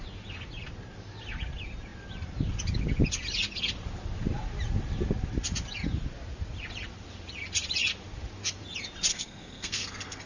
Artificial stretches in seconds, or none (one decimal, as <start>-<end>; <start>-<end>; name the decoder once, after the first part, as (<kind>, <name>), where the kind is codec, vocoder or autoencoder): 9.1-10.3 (codec, SNAC)